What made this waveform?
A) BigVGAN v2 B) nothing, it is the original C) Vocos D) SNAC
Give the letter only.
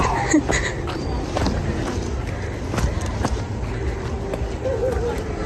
B